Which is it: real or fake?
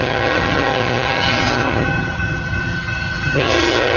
fake